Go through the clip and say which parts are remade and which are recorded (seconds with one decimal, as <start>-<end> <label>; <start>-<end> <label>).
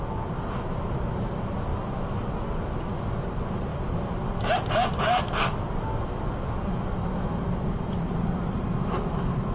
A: 0.0-1.7 recorded; 1.7-2.4 remade; 2.4-3.7 recorded; 3.7-6.2 remade; 6.2-9.5 recorded